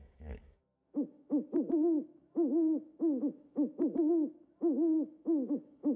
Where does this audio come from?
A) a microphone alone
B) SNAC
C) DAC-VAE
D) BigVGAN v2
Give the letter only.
C